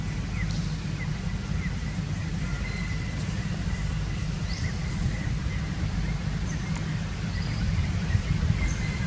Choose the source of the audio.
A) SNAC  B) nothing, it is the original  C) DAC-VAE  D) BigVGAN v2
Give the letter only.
D